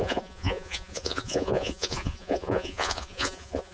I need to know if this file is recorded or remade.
remade